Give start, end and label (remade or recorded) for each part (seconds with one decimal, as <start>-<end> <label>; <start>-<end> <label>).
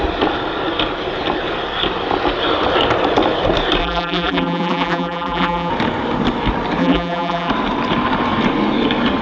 0.0-3.8 recorded; 3.8-5.7 remade; 5.7-6.8 recorded; 6.8-7.5 remade; 7.5-9.2 recorded